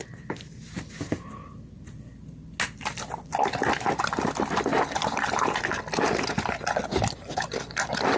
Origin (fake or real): real